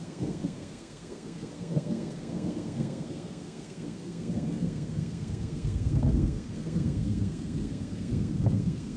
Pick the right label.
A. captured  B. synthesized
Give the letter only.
B